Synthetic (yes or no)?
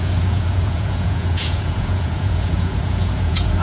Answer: yes